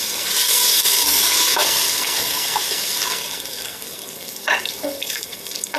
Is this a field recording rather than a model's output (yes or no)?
no